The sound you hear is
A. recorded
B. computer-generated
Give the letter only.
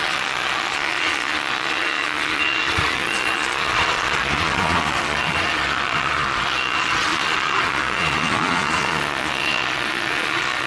B